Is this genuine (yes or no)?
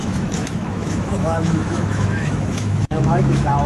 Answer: no